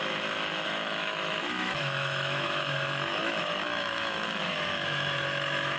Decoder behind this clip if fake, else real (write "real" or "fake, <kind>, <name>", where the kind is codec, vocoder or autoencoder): fake, autoencoder, DAC-VAE